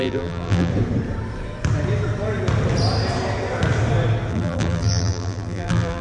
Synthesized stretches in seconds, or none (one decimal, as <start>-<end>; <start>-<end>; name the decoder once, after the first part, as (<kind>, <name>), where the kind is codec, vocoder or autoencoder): 0.0-0.7 (vocoder, BigVGAN v2); 4.3-6.0